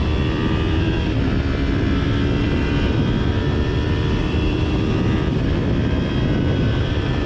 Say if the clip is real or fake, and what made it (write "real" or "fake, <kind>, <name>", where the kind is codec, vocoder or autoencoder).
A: fake, vocoder, BigVGAN v2